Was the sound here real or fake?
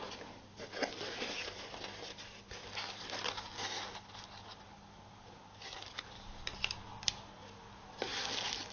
real